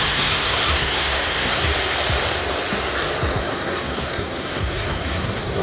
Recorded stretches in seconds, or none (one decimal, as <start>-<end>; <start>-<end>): 1.7-3.4